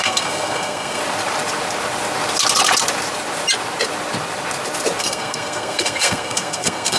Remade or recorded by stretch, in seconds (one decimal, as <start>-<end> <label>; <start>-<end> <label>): 0.0-1.0 remade; 1.0-5.0 recorded; 5.0-7.0 remade